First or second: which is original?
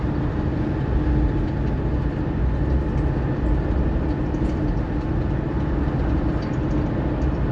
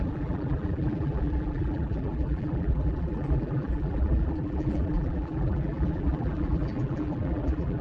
first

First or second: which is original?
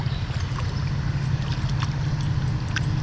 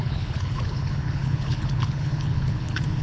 first